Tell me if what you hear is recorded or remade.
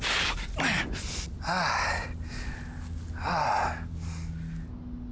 recorded